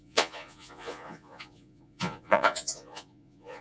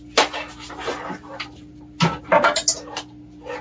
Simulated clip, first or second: first